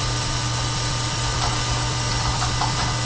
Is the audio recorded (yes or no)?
no